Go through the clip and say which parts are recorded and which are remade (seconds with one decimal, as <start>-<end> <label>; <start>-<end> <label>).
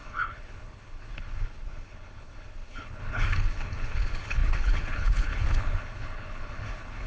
0.0-7.1 remade